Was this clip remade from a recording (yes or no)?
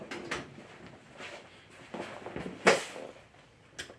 no